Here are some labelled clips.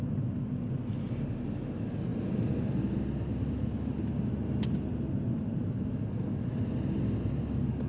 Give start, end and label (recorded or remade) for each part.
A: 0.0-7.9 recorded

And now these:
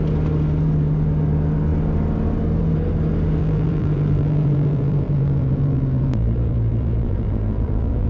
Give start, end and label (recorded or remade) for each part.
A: 0.0-3.4 recorded; 3.4-8.1 remade

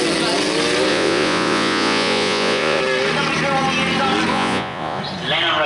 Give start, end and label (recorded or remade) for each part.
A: 0.0-0.9 recorded; 0.9-2.8 remade; 2.8-4.3 recorded; 4.3-5.0 remade; 5.0-5.7 recorded

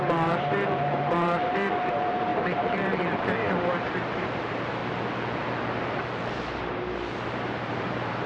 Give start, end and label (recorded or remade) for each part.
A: 0.0-4.8 remade; 4.8-6.3 recorded; 6.3-8.3 remade

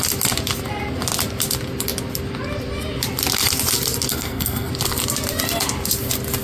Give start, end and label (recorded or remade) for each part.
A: 0.0-4.1 recorded; 4.1-4.7 remade; 4.7-6.4 recorded